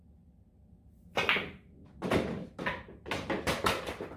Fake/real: real